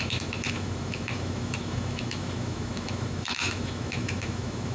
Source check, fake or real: fake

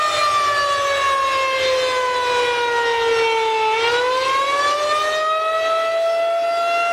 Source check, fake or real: real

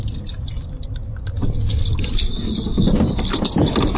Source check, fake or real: real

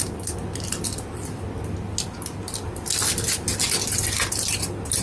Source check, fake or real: real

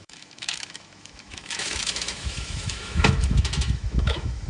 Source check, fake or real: fake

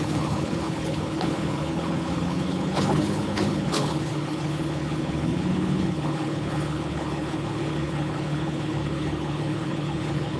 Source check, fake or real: fake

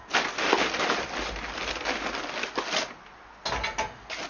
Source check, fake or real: real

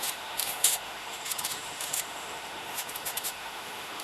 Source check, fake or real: fake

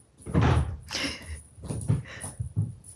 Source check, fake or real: real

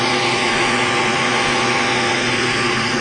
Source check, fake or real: real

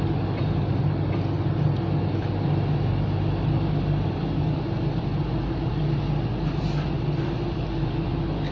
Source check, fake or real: real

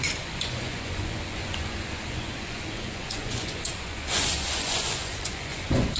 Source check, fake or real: fake